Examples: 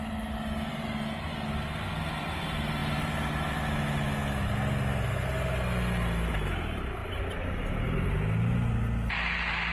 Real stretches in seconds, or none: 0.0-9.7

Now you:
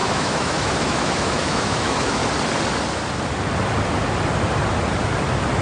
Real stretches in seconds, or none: 2.2-5.6